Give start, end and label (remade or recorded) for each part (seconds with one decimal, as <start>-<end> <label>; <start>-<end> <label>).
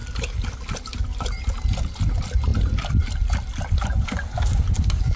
0.0-5.2 recorded